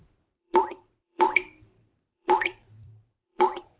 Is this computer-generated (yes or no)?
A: yes